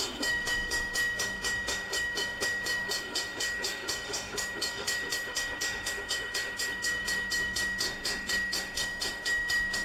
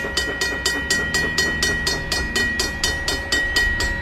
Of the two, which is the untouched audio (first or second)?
second